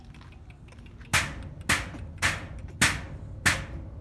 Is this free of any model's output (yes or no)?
yes